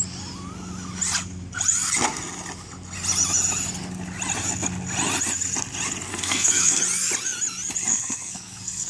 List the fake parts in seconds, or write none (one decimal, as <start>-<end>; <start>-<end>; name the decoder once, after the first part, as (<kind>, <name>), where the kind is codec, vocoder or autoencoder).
6.1-6.8 (codec, SNAC); 7.9-8.9